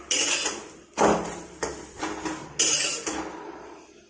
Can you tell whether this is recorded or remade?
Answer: recorded